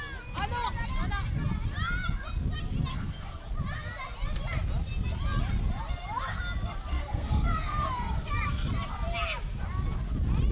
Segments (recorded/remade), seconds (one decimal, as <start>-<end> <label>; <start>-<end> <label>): 0.0-2.9 recorded; 2.9-3.4 remade; 3.4-6.9 recorded; 6.9-8.3 remade; 8.3-10.5 recorded